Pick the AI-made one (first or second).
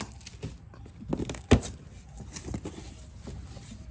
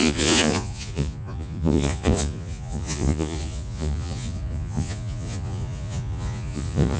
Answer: second